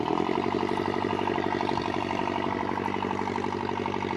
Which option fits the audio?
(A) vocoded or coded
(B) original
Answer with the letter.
B